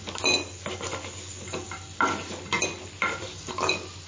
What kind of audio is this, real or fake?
real